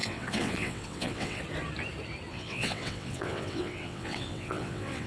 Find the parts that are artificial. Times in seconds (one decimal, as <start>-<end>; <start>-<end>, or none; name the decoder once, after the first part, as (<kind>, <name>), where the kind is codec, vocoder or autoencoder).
0.0-1.4 (vocoder, WaveNeXt); 2.3-5.1